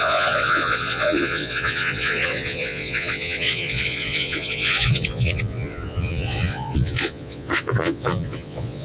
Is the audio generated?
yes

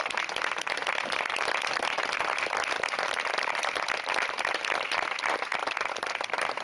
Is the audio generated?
no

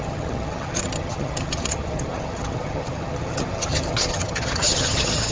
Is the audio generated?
yes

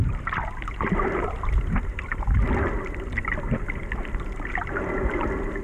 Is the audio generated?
no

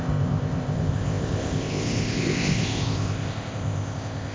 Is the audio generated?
yes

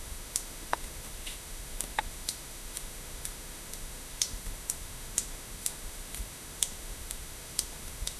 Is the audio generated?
yes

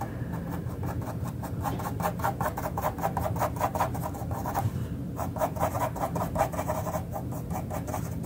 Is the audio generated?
yes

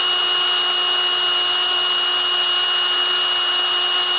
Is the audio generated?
no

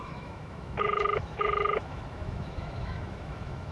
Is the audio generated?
yes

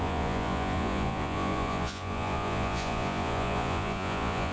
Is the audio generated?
yes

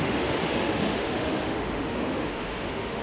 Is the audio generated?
yes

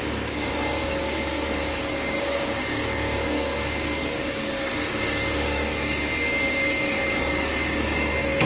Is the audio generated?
yes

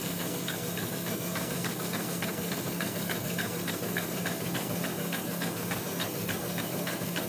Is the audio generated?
yes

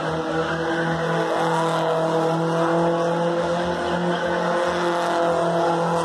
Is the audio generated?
no